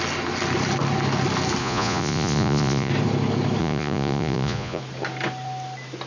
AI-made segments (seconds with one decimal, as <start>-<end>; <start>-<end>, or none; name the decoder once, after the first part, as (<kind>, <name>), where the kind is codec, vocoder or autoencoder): 1.6-2.9 (vocoder, Vocos); 3.6-4.8